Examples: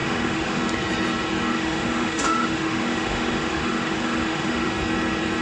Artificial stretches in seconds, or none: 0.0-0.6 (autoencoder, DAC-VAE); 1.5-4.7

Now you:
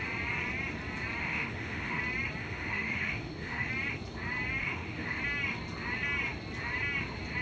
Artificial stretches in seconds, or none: 1.2-2.0 (autoencoder, DAC-VAE); 2.4-3.7; 4.6-5.2

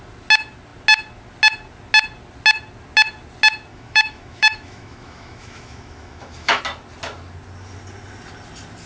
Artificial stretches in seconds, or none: 3.7-6.6 (autoencoder, DAC-VAE)

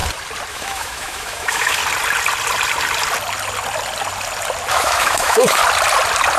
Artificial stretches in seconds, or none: 0.5-1.8 (autoencoder, DAC-VAE); 4.7-5.6

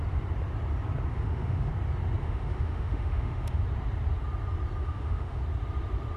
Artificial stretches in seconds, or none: 1.1-1.7 (autoencoder, DAC-VAE); 2.2-3.6; 4.8-5.4

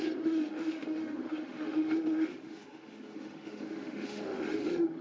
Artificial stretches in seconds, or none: 0.0-5.0 (autoencoder, DAC-VAE)

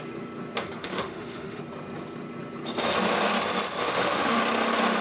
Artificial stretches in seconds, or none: 0.8-1.6 (autoencoder, DAC-VAE); 3.8-4.4